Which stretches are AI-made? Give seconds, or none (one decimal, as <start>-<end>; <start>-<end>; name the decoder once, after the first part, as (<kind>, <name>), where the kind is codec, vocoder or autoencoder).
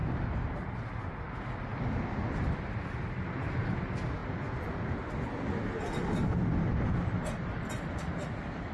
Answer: 0.0-1.0 (vocoder, BigVGAN v2)